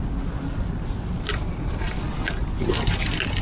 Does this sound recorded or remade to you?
recorded